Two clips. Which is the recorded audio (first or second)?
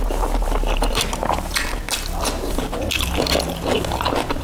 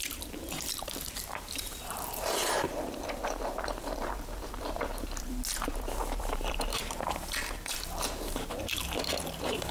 first